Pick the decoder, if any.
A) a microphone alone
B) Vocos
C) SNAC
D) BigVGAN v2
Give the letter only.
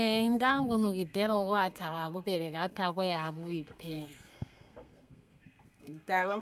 C